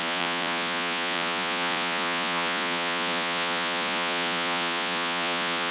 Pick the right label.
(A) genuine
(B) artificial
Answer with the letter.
B